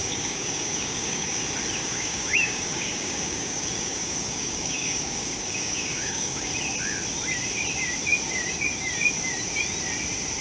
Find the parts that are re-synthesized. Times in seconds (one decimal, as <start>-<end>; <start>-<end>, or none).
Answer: 0.0-1.4; 1.8-6.5